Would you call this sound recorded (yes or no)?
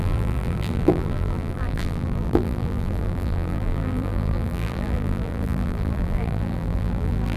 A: no